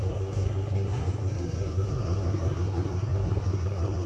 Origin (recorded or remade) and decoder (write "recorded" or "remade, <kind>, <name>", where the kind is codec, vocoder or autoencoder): remade, codec, SNAC